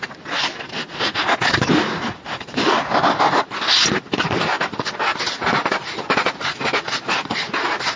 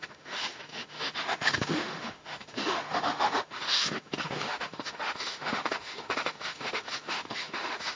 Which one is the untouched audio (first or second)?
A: first